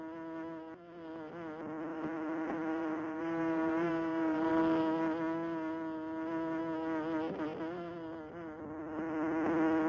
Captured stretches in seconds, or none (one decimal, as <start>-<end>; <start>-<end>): 0.0-1.9; 4.6-9.9